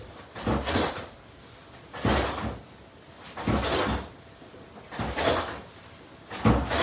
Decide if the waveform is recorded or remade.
recorded